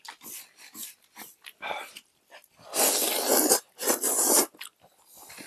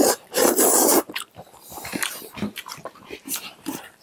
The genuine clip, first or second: first